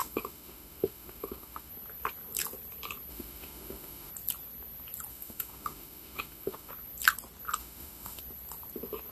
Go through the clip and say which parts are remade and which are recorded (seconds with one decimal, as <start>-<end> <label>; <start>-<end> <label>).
0.0-1.7 remade; 1.7-3.1 recorded; 3.1-4.1 remade; 4.1-5.1 recorded; 5.1-6.7 remade; 6.7-7.6 recorded; 7.6-8.2 remade; 8.2-9.1 recorded